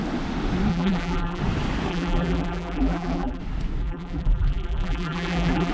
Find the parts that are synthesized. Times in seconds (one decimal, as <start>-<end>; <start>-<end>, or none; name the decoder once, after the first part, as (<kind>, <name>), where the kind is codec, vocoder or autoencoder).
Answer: 0.7-1.4 (vocoder, BigVGAN v2); 1.9-3.4; 3.8-5.7